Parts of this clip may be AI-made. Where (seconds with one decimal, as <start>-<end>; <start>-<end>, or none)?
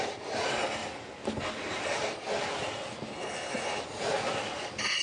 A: 3.1-3.8